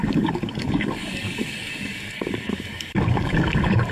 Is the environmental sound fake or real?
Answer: fake